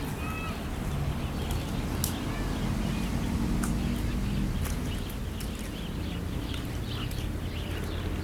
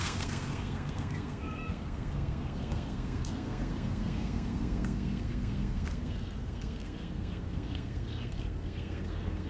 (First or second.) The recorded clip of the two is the first